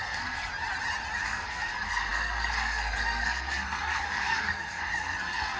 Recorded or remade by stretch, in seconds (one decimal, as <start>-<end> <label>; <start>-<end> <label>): 0.0-0.5 remade; 0.5-1.2 recorded; 1.2-5.6 remade